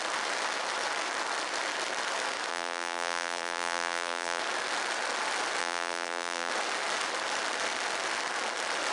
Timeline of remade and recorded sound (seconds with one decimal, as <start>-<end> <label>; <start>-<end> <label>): 0.0-2.5 recorded; 2.5-4.4 remade; 4.4-5.6 recorded; 5.6-6.5 remade; 6.5-8.9 recorded